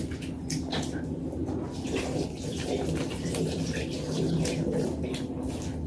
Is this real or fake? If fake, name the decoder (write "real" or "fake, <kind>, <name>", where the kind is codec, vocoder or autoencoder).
real